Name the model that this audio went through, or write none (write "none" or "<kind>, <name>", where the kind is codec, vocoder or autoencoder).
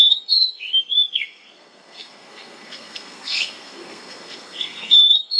codec, SNAC